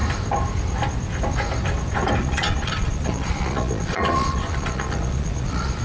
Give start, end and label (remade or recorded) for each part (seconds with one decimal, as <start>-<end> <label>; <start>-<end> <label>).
0.0-2.2 recorded; 2.2-5.8 remade

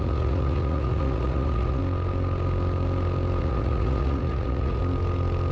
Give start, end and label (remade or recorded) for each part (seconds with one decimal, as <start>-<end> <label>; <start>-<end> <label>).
0.0-1.8 remade; 1.8-3.4 recorded; 3.4-4.8 remade; 4.8-5.5 recorded